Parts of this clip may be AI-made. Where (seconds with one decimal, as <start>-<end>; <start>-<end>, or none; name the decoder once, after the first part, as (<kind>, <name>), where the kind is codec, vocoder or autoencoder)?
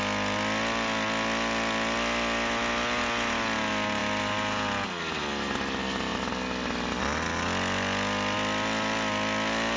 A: none